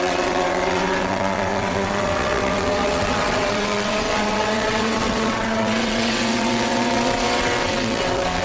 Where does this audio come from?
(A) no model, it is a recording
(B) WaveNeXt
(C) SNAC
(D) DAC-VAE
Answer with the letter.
B